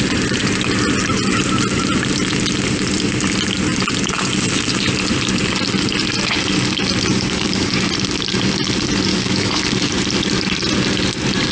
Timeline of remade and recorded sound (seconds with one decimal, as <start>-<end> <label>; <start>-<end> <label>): 0.0-7.1 recorded; 7.1-7.7 remade; 7.7-9.1 recorded; 9.1-9.6 remade; 9.6-11.5 recorded